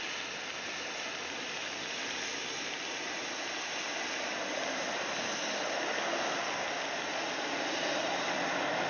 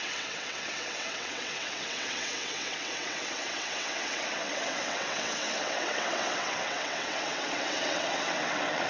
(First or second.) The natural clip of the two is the first